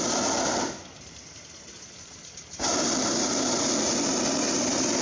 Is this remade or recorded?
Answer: recorded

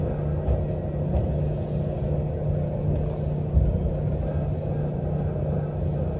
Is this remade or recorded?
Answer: recorded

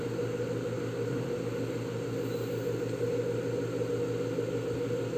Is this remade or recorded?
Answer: recorded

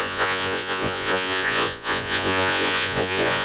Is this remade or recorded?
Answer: remade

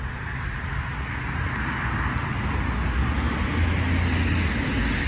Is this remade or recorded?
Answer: recorded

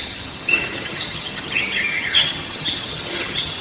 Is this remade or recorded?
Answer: remade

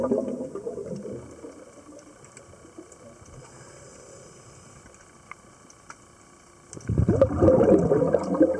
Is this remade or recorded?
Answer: recorded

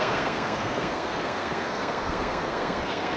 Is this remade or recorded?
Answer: remade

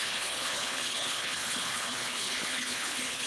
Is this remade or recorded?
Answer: remade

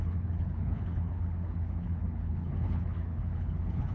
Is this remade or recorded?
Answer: remade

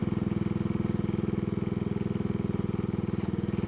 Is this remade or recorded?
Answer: recorded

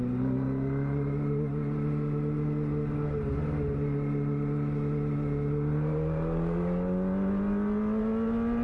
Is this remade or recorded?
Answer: recorded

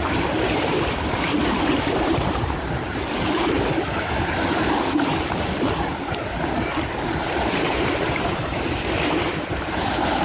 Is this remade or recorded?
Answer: remade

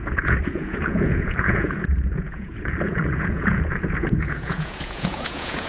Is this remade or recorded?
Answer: remade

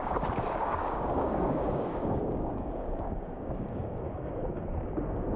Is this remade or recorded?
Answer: remade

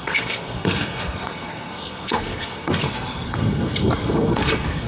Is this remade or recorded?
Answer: remade